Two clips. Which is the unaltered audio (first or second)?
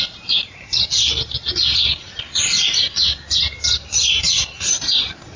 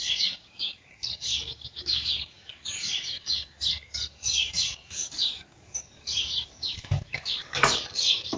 first